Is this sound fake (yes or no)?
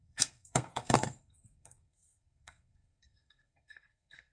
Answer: yes